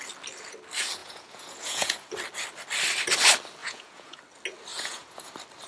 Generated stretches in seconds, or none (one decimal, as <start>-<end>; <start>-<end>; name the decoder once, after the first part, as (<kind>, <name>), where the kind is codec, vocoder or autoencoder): 1.0-2.1 (vocoder, Vocos); 3.6-4.2; 4.7-5.3